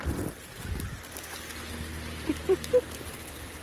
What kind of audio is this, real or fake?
real